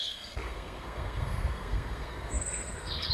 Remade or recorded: remade